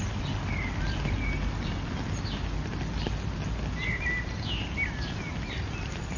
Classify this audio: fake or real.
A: real